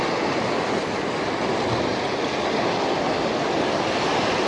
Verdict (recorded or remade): recorded